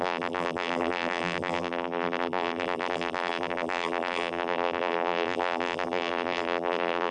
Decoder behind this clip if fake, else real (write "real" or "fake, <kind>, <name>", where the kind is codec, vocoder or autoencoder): fake, vocoder, BigVGAN v2